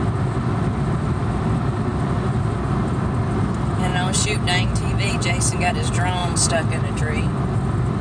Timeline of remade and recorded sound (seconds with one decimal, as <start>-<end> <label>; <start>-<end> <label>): 0.0-8.0 recorded